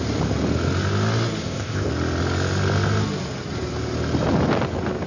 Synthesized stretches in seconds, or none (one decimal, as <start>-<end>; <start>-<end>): 1.4-1.9